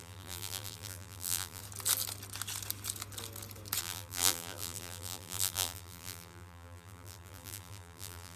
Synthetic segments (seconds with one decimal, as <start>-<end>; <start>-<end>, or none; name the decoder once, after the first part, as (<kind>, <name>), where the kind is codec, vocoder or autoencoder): 0.0-1.6 (vocoder, BigVGAN v2); 3.8-8.4